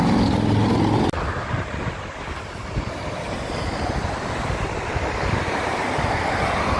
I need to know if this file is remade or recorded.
recorded